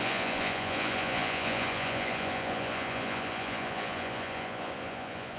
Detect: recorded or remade remade